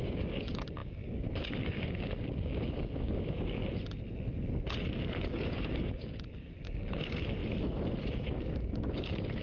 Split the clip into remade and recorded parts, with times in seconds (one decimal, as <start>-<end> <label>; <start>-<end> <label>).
0.0-3.6 remade; 3.6-5.3 recorded; 5.3-7.4 remade; 7.4-8.1 recorded; 8.1-9.4 remade